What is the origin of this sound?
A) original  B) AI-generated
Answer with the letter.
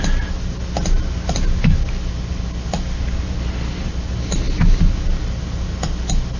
A